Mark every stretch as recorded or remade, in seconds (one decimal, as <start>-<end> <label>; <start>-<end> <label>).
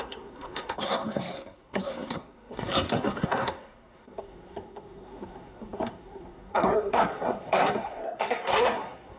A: 0.0-9.2 remade